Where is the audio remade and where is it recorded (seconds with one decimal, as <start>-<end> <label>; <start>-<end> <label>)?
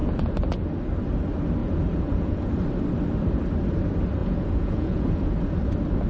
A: 0.0-1.6 recorded; 1.6-2.5 remade; 2.5-4.2 recorded; 4.2-5.3 remade; 5.3-6.1 recorded